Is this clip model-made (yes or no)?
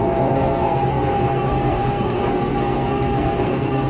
yes